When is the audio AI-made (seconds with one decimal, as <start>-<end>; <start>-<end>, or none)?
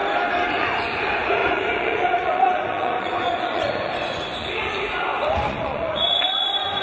0.5-6.8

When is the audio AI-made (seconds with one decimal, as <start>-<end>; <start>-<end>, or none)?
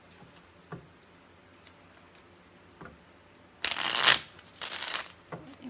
none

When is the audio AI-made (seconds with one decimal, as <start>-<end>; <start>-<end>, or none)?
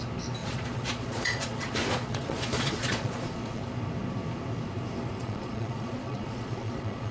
0.4-3.6; 5.2-7.1